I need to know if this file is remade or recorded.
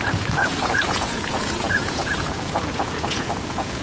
remade